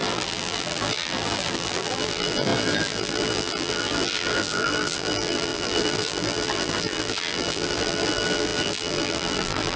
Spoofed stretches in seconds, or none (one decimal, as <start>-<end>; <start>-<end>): 0.0-9.8